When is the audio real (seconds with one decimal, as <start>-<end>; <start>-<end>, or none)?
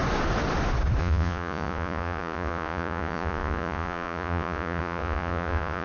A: 0.0-1.0